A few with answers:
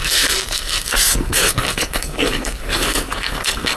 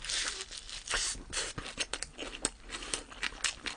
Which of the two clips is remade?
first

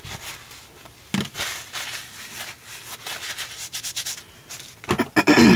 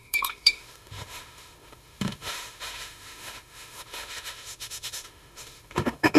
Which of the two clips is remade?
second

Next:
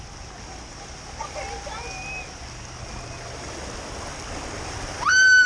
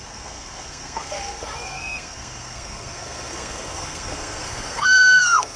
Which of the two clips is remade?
second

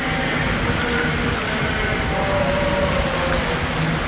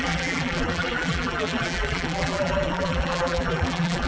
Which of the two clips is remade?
second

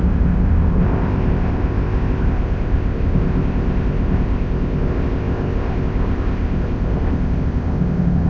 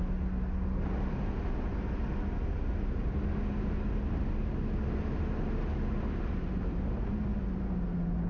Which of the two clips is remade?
first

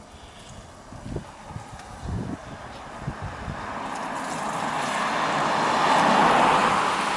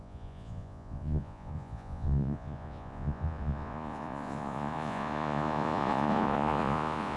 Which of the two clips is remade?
second